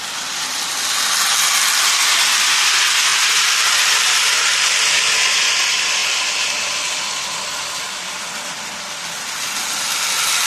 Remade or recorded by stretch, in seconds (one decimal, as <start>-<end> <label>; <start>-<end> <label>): 0.0-3.1 recorded; 3.1-4.8 remade; 4.8-10.5 recorded